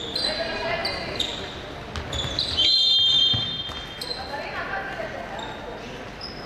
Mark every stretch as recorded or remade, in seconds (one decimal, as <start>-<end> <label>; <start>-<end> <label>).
0.0-6.5 recorded